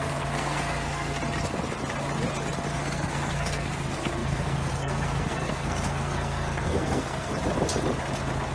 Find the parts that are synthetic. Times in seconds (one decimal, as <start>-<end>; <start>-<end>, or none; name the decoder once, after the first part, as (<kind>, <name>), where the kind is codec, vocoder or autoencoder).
0.0-1.1 (codec, SNAC); 2.7-7.3